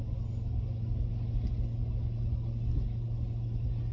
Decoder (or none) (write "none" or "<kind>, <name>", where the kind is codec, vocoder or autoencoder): none